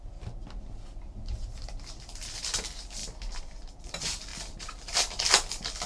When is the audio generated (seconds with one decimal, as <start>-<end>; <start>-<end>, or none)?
none